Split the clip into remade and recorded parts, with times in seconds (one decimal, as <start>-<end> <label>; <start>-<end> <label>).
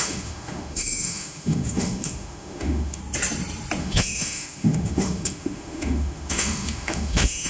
0.0-3.0 remade; 3.0-3.8 recorded; 3.8-7.5 remade